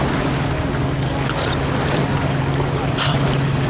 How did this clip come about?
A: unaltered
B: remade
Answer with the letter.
A